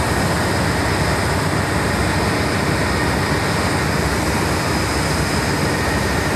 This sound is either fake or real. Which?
real